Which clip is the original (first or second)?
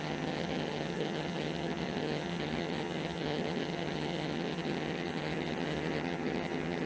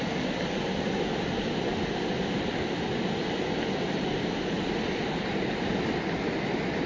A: second